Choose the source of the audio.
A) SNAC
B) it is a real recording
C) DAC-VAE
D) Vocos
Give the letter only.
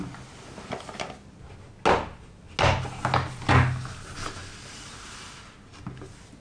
B